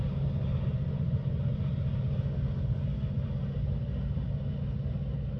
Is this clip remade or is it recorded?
recorded